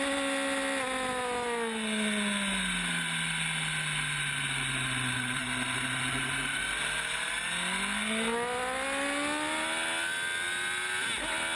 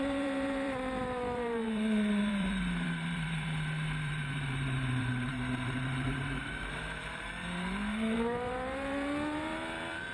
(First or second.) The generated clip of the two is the second